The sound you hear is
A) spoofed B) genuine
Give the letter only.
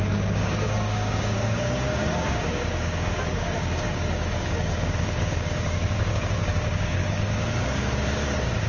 A